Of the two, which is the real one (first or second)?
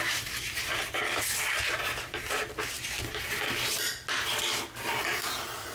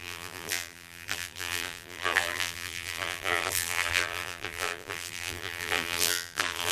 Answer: first